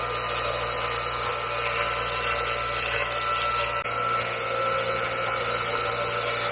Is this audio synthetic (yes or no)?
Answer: no